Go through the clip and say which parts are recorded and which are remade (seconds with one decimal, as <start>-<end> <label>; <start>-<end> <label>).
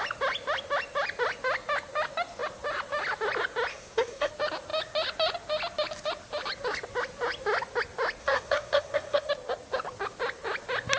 0.0-3.7 recorded; 3.7-4.3 remade; 4.3-8.2 recorded; 8.2-9.3 remade; 9.3-11.0 recorded